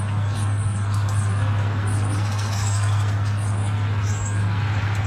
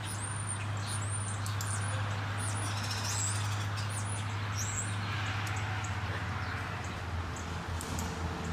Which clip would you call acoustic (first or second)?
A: second